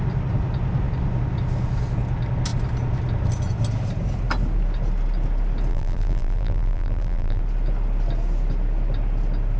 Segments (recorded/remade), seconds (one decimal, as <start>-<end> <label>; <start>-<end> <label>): 0.0-5.7 recorded; 5.7-7.4 remade; 7.4-9.6 recorded